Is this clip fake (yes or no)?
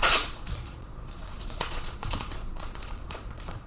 yes